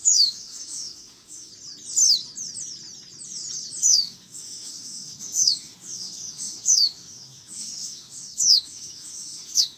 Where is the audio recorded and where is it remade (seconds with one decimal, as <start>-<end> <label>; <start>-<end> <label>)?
0.0-1.5 remade; 1.5-3.8 recorded; 3.8-9.8 remade